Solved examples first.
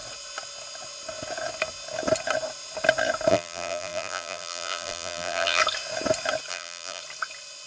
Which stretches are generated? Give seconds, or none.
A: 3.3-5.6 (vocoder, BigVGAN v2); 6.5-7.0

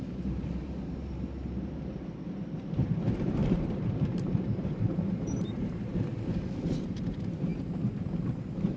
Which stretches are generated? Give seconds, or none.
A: 0.0-5.9 (vocoder, BigVGAN v2); 6.9-7.5

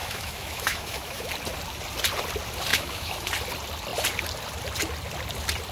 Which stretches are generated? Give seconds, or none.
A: 0.0-1.3 (autoencoder, DAC-VAE); 2.7-3.3

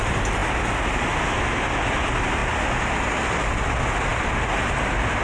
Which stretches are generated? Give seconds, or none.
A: none